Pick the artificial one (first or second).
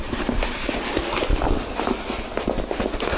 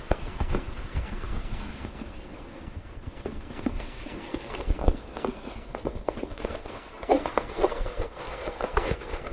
second